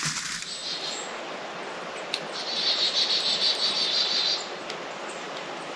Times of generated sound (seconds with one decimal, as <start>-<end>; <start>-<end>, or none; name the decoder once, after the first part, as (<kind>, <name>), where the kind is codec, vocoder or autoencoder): none